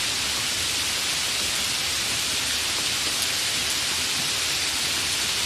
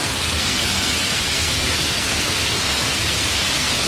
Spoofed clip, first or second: second